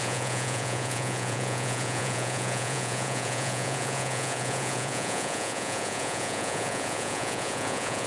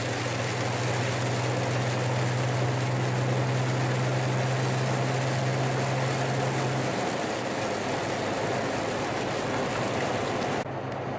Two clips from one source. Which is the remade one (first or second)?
first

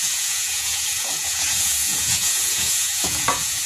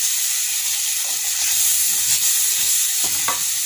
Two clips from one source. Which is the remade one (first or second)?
first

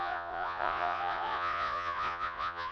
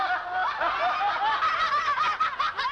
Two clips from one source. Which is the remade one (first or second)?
first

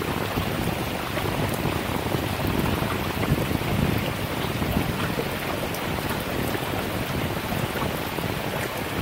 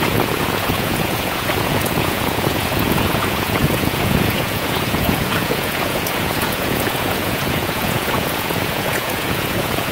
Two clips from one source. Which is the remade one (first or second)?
second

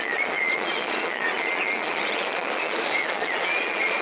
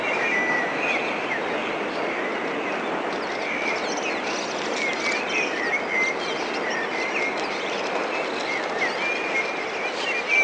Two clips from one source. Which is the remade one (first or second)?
first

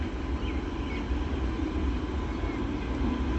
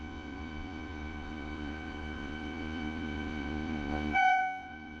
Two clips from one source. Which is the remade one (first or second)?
second